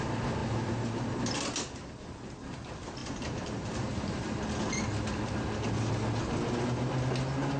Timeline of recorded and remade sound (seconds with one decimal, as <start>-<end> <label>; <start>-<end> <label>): 0.0-0.4 recorded; 0.4-1.2 remade; 1.2-3.0 recorded; 3.0-4.4 remade; 4.4-7.6 recorded